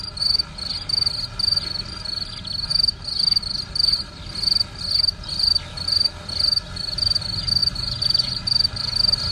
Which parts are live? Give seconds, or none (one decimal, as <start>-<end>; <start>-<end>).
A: 0.0-7.6; 8.4-9.3